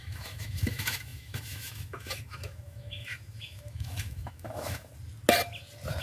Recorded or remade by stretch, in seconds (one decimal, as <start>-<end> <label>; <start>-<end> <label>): 0.0-4.9 remade; 4.9-6.0 recorded